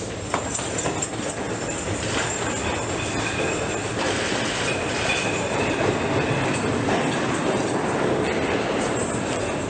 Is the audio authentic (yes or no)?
yes